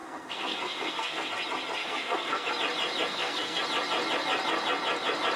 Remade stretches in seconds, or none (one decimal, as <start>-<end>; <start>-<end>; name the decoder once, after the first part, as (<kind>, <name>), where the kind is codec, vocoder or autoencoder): 0.0-1.3 (codec, SNAC); 1.8-2.5; 3.1-3.6